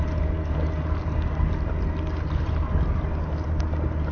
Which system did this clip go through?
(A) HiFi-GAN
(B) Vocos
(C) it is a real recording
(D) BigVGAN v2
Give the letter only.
C